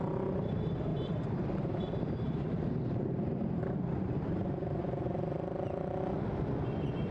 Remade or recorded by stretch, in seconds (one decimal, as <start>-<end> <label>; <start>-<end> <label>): 0.0-0.9 recorded; 0.9-4.8 remade; 4.8-7.1 recorded